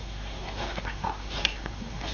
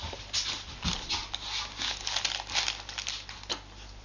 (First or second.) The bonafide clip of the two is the second